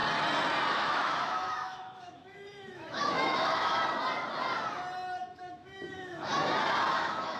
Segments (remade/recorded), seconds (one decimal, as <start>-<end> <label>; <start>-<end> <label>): 0.0-0.7 recorded; 0.7-3.8 remade; 3.8-5.2 recorded; 5.2-6.3 remade; 6.3-6.9 recorded; 6.9-7.4 remade